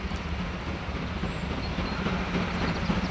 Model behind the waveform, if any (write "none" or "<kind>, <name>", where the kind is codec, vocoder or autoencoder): none